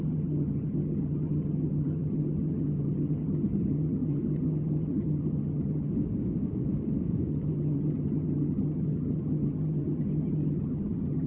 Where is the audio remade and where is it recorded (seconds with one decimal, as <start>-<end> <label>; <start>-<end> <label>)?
0.0-5.9 remade; 5.9-7.3 recorded; 7.3-11.3 remade